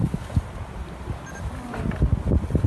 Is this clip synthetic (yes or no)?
no